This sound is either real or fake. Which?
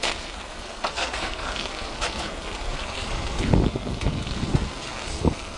fake